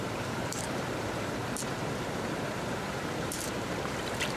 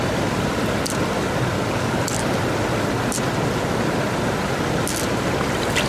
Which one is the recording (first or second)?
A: second